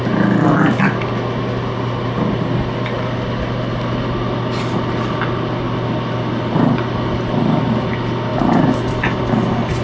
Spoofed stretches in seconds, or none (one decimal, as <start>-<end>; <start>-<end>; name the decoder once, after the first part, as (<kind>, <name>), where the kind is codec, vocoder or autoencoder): none